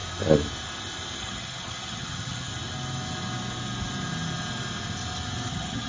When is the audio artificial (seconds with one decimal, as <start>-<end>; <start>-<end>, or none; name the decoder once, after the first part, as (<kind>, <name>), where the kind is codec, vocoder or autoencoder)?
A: 1.2-2.5 (vocoder, HiFi-GAN); 5.5-5.9